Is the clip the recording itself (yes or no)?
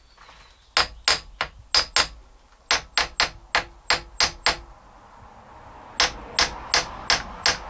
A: yes